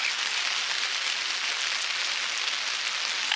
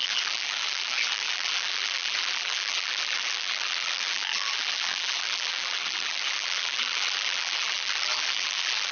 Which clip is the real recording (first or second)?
first